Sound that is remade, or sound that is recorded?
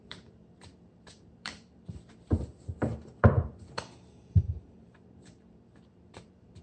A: remade